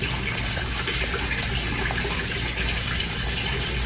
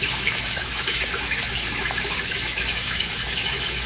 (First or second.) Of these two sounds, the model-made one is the second